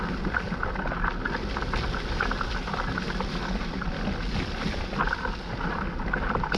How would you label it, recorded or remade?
recorded